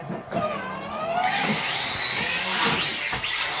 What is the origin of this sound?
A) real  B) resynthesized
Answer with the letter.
A